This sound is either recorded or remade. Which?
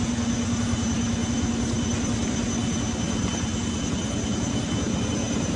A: recorded